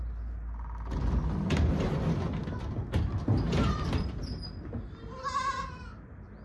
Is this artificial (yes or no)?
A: no